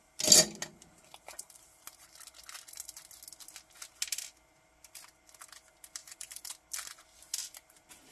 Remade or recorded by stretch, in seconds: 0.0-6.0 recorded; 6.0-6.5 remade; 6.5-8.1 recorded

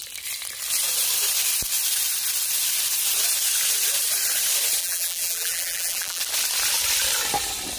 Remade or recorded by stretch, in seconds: 0.0-4.8 recorded; 4.8-6.2 remade; 6.2-7.8 recorded

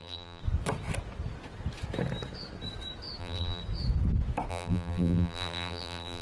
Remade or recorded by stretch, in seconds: 0.0-0.4 remade; 0.4-3.2 recorded; 3.2-3.6 remade; 3.6-4.5 recorded; 4.5-6.2 remade

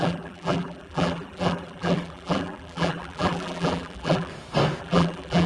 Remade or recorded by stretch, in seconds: 0.0-4.3 remade; 4.3-4.8 recorded; 4.8-5.5 remade

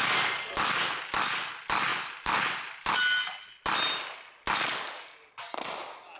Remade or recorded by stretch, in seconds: 0.0-6.2 recorded